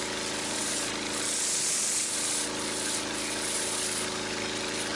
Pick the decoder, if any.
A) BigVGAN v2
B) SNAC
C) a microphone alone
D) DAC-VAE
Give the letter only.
C